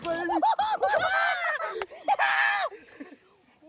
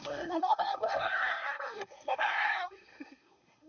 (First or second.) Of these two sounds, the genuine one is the first